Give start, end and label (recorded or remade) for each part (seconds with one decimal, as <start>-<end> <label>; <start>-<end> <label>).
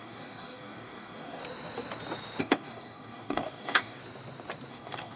0.0-1.4 remade; 1.4-2.4 recorded; 2.4-4.0 remade; 4.0-4.7 recorded; 4.7-5.2 remade